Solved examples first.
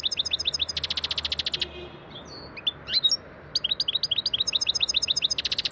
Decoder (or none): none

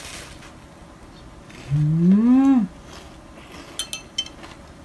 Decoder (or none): none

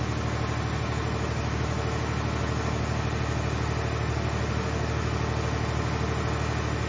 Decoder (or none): none